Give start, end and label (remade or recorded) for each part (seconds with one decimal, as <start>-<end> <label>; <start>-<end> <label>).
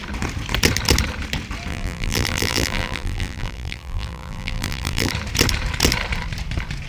0.0-1.7 recorded; 1.7-5.1 remade; 5.1-6.9 recorded